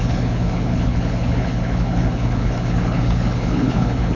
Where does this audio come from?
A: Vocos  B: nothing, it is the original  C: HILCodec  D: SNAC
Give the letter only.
C